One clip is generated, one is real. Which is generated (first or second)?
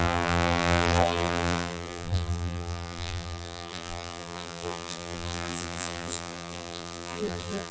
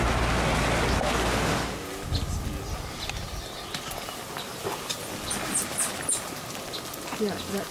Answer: first